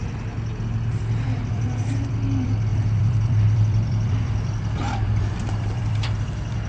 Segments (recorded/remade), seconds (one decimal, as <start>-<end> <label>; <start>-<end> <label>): 0.0-0.9 recorded; 0.9-6.7 remade